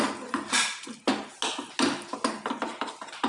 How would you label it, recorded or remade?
recorded